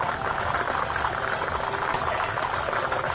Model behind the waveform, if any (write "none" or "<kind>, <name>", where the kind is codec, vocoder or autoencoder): none